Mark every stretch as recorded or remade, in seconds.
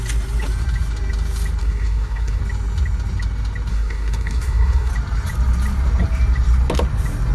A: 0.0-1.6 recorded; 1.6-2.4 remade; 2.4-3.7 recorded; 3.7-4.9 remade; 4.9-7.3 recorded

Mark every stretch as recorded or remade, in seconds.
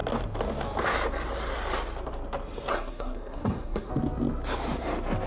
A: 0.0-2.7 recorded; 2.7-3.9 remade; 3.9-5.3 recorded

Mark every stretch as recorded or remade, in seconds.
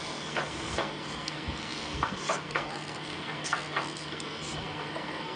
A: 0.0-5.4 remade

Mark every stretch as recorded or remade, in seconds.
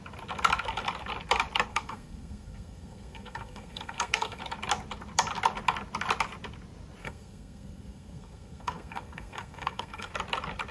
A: 0.0-1.7 recorded; 1.7-4.4 remade; 4.4-7.0 recorded; 7.0-10.1 remade; 10.1-10.7 recorded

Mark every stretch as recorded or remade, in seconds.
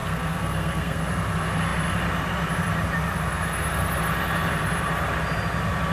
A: 0.0-1.0 remade; 1.0-5.9 recorded